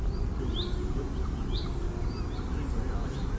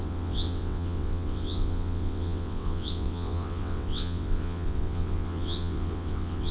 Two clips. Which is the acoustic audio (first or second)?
first